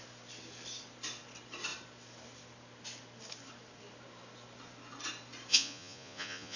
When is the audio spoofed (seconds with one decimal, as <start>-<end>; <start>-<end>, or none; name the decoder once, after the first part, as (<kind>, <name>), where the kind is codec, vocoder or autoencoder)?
5.5-6.6 (vocoder, Vocos)